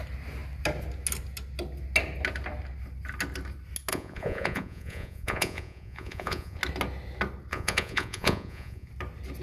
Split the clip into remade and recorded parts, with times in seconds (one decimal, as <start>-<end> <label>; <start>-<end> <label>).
0.0-3.9 recorded; 3.9-6.6 remade; 6.6-7.5 recorded; 7.5-8.9 remade; 8.9-9.4 recorded

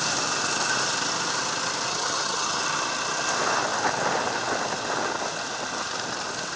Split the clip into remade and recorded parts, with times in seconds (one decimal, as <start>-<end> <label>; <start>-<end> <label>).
0.0-1.9 recorded; 1.9-2.6 remade; 2.6-6.6 recorded

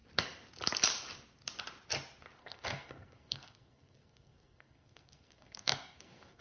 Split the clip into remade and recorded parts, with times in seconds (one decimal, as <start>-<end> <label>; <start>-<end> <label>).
0.0-2.4 recorded; 2.4-6.4 remade

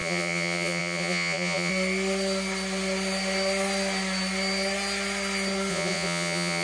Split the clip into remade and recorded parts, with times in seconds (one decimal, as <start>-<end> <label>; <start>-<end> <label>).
0.0-1.7 remade; 1.7-5.7 recorded; 5.7-6.6 remade